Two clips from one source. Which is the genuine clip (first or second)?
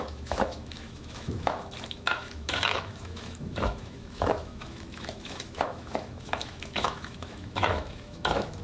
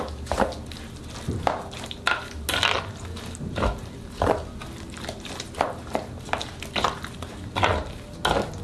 second